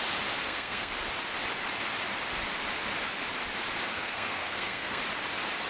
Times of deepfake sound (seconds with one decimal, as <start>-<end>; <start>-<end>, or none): 0.4-0.9; 3.9-5.0

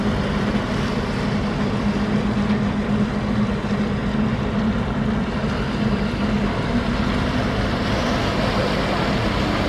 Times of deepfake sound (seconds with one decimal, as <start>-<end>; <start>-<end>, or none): none

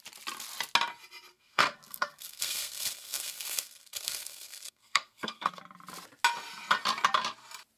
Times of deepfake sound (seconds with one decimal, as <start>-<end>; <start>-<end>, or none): 1.3-5.6